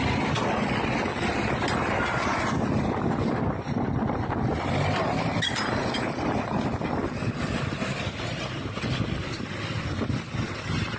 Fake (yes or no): no